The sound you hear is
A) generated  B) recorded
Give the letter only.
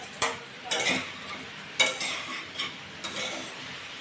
B